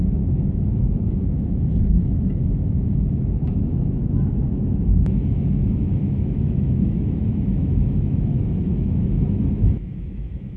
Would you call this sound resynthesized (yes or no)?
yes